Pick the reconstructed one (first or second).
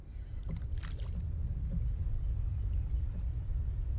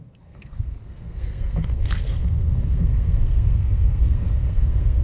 second